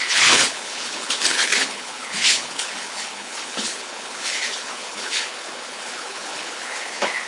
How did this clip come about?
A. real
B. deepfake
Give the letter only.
B